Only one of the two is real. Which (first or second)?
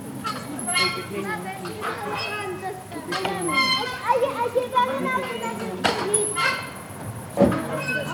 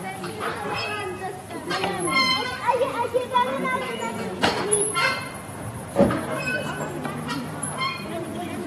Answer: first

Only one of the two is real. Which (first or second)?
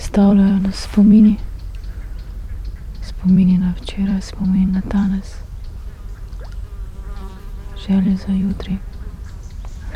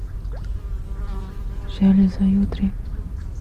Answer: second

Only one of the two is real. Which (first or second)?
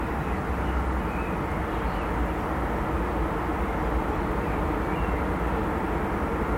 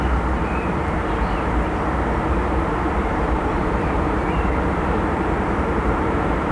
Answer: first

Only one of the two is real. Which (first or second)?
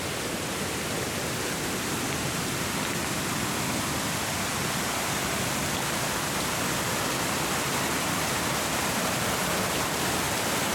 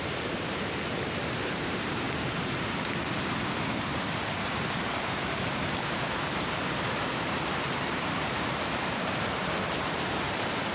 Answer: first